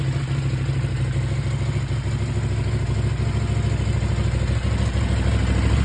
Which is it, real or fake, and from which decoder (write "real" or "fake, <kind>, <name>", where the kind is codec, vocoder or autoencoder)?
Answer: real